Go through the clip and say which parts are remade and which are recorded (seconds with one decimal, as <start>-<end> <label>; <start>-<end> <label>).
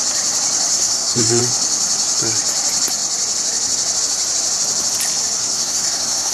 0.0-0.7 recorded; 0.7-1.4 remade; 1.4-5.4 recorded; 5.4-6.3 remade